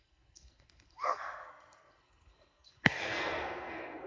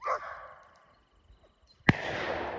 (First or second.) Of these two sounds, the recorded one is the second